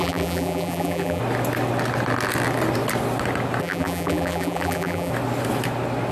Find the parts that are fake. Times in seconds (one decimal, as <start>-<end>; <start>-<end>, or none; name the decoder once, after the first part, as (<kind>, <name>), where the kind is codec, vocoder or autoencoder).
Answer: 0.0-1.2 (vocoder, BigVGAN v2); 3.6-5.1